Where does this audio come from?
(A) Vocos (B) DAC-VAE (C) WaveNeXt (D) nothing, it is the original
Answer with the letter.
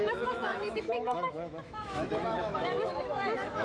B